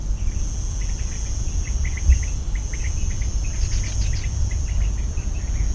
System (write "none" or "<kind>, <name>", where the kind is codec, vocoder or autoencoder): none